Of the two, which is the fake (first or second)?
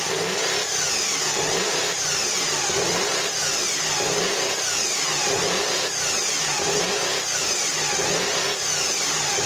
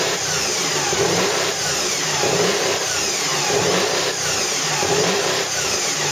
second